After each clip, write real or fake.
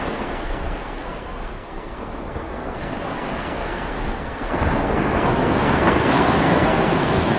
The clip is fake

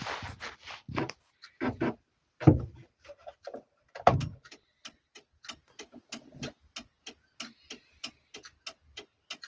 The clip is real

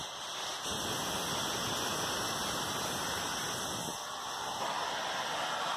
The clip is real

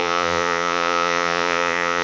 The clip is fake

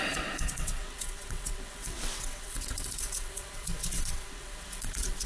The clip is fake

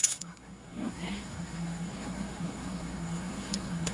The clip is fake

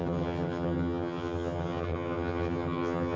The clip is fake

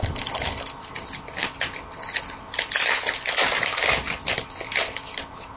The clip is real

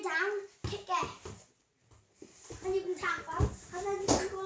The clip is real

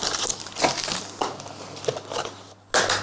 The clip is real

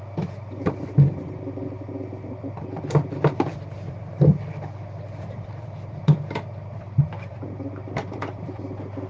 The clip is fake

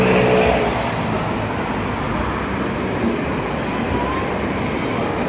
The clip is real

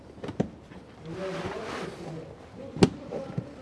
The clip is real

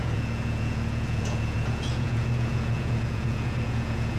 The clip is fake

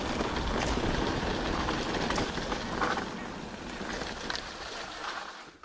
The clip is real